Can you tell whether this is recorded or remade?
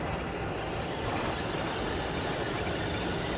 recorded